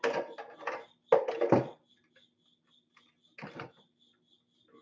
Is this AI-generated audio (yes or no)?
no